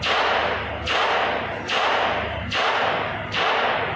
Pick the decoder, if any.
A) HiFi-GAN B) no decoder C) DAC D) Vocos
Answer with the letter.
B